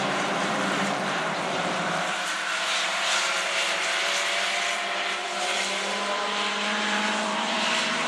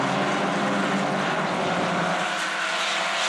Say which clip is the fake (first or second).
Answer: first